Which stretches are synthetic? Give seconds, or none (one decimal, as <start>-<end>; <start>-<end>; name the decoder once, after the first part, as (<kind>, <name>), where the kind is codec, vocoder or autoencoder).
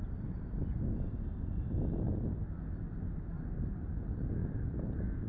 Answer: none